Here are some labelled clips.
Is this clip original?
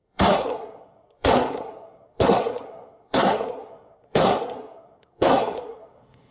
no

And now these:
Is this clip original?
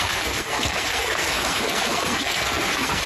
no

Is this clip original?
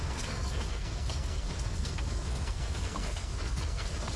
no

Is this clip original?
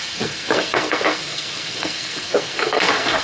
no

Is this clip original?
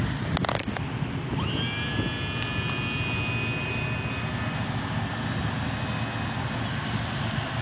yes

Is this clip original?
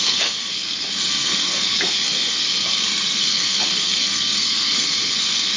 no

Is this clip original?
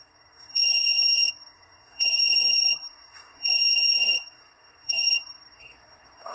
no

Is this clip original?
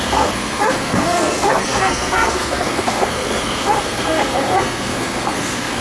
no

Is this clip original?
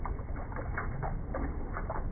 yes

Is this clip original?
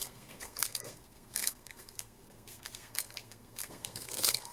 no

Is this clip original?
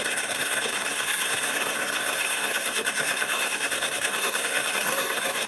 no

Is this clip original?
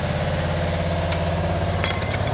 yes